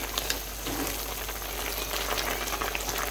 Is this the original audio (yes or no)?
yes